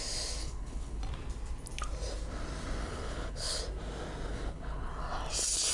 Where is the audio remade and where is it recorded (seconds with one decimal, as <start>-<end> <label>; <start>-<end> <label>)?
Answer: 0.0-0.4 recorded; 0.4-1.0 remade; 1.0-2.8 recorded; 2.8-3.6 remade; 3.6-4.3 recorded; 4.3-4.9 remade; 4.9-5.7 recorded